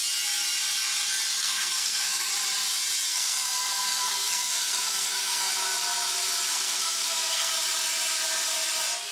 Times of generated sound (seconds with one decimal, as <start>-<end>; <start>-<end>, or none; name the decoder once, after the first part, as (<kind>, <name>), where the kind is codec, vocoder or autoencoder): 1.4-2.3 (codec, SNAC); 3.1-5.5; 6.5-7.5